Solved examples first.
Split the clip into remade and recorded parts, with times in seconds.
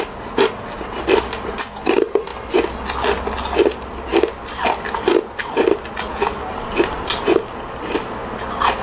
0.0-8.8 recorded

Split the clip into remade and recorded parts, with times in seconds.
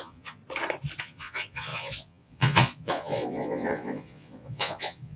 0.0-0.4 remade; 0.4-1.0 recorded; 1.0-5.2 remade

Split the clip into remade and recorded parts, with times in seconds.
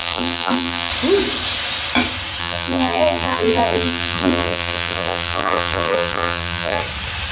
0.0-0.9 remade; 0.9-2.4 recorded; 2.4-6.8 remade; 6.8-7.3 recorded